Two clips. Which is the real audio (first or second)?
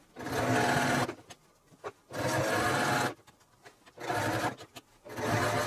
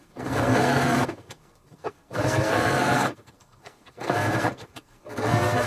first